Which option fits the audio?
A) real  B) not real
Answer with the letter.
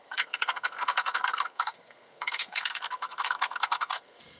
B